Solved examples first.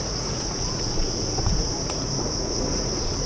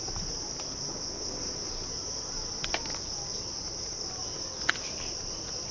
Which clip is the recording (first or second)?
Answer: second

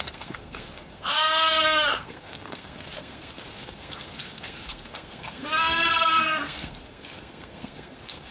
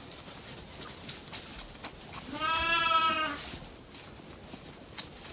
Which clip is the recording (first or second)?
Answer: second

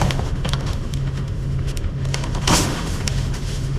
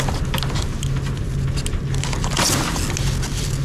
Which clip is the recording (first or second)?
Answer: second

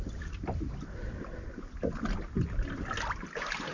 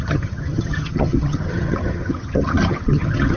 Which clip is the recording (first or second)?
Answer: first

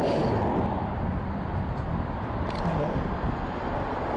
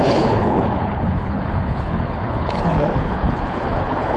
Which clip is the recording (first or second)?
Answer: first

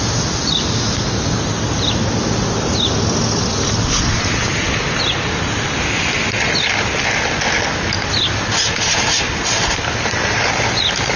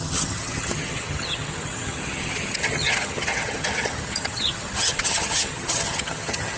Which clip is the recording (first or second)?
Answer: first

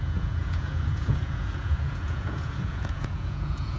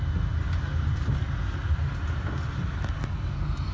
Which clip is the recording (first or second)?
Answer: second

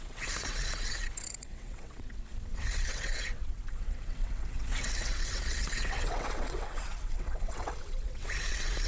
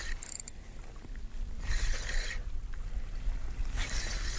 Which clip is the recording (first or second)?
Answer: second